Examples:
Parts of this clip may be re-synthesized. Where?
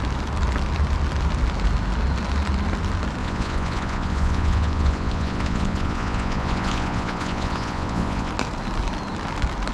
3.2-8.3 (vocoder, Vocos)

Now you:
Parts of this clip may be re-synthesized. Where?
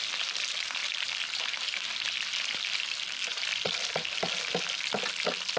0.8-2.6 (vocoder, BigVGAN v2); 3.3-4.4